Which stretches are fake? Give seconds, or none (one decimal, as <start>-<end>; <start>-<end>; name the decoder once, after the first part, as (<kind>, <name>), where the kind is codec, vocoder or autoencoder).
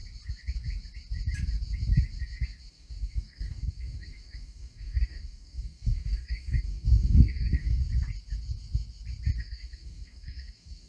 2.7-7.8 (codec, DAC); 9.4-10.9